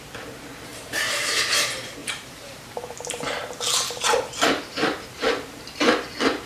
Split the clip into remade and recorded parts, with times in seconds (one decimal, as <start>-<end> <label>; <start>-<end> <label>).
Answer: 0.0-0.7 recorded; 0.7-1.4 remade; 1.4-2.0 recorded; 2.0-5.9 remade; 5.9-6.5 recorded